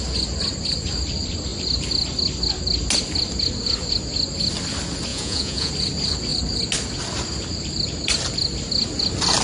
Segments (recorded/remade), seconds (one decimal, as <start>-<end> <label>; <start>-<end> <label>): 0.0-5.1 recorded; 5.1-5.7 remade; 5.7-9.4 recorded